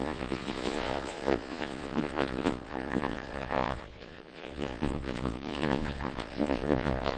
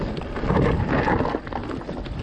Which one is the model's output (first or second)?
first